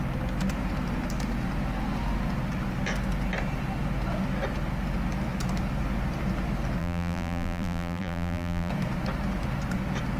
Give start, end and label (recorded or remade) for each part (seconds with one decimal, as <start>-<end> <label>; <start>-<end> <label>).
0.0-6.8 recorded; 6.8-8.7 remade; 8.7-10.2 recorded